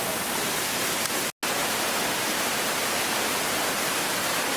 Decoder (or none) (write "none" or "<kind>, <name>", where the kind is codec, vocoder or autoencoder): none